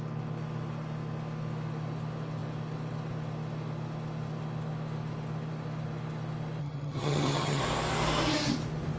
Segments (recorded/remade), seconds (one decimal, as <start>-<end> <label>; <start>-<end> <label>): 0.0-6.6 recorded; 6.6-7.6 remade; 7.6-9.0 recorded